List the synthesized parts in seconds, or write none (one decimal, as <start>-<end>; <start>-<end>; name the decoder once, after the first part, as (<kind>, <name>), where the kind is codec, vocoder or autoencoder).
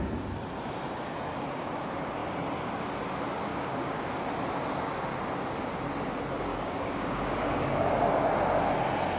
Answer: 3.5-4.1 (codec, DAC); 6.5-8.1